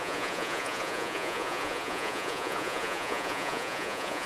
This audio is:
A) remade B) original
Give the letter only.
A